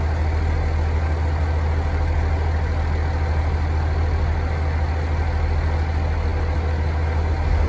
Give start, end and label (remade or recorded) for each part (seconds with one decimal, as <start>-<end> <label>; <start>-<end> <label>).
0.0-7.7 recorded

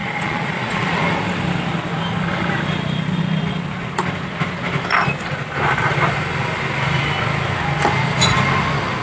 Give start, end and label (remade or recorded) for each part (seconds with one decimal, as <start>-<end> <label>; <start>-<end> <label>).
0.0-1.0 remade; 1.0-9.0 recorded